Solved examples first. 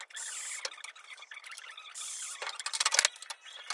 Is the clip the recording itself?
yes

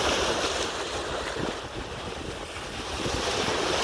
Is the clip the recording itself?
yes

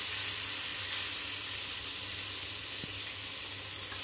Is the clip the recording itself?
yes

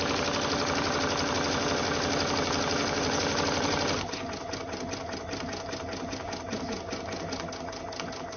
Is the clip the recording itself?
yes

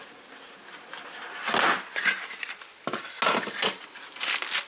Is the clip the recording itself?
yes